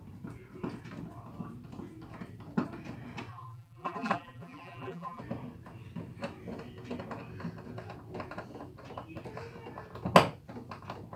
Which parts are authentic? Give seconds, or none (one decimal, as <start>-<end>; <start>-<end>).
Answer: 0.0-3.3; 5.2-11.2